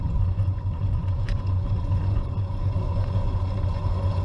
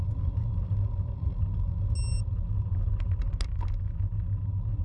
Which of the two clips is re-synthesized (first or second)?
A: first